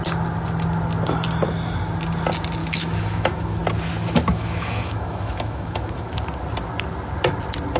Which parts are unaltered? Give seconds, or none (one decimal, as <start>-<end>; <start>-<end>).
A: 0.0-2.6; 3.6-4.3; 6.1-7.8